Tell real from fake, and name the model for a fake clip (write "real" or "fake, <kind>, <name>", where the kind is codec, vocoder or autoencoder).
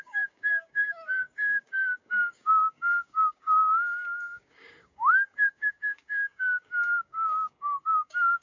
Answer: fake, codec, DAC